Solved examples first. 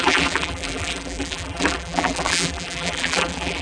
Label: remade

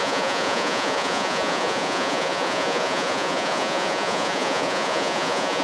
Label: remade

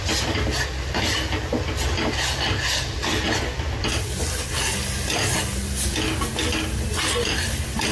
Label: recorded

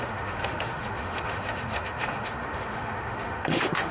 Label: remade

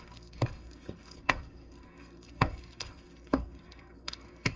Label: remade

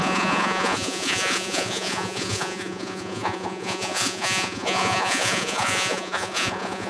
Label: remade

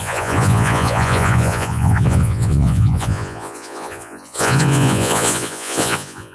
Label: remade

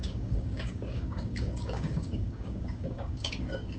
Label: remade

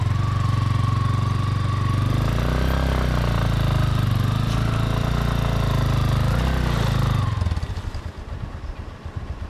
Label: recorded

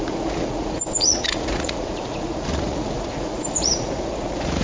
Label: remade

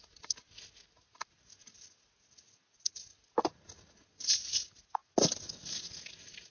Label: recorded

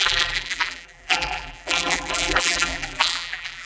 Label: remade